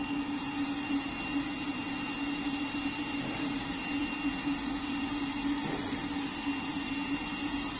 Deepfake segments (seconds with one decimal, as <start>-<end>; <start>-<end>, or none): none